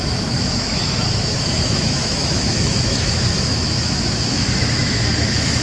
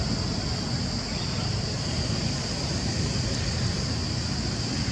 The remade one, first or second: first